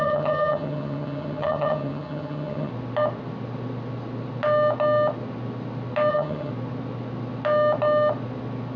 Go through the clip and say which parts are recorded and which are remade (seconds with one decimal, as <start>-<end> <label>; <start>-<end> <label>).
0.0-2.7 remade; 2.7-6.1 recorded; 6.1-6.5 remade; 6.5-8.8 recorded